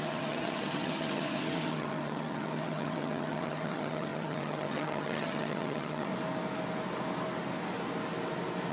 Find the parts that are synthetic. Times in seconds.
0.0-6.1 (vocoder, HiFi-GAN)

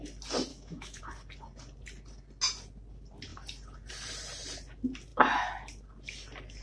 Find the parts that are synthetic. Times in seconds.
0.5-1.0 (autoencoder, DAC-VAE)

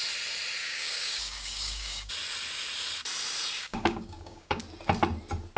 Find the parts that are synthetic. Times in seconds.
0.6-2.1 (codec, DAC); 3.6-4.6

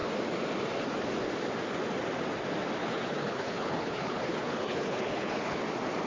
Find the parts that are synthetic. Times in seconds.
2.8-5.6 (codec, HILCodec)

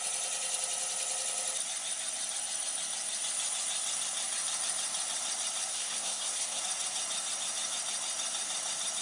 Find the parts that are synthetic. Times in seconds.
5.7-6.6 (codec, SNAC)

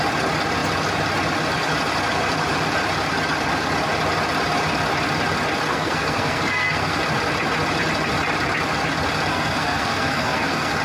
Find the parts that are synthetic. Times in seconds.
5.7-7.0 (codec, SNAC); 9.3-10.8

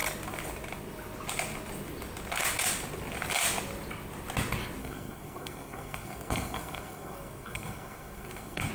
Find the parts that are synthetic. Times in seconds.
4.8-8.7 (codec, SNAC)